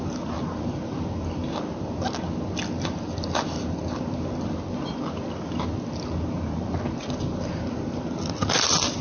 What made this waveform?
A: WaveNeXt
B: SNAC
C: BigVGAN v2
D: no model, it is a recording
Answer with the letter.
D